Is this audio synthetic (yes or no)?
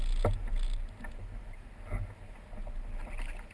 no